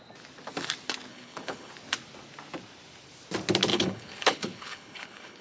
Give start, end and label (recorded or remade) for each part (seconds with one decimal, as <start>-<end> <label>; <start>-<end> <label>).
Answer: 0.0-1.1 recorded; 1.1-1.7 remade; 1.7-3.7 recorded; 3.7-5.4 remade